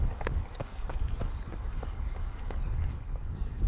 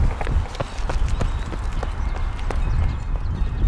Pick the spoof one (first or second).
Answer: first